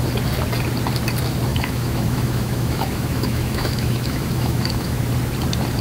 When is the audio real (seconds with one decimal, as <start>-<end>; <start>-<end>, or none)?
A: 0.0-1.5; 5.0-5.8